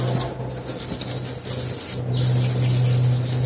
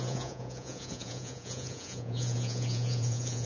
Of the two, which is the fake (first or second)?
second